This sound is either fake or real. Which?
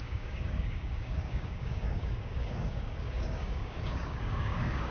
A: fake